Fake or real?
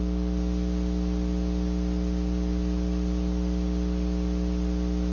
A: real